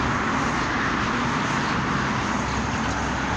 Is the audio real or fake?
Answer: real